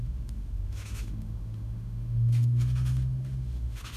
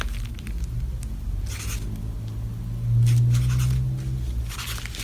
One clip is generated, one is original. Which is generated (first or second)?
first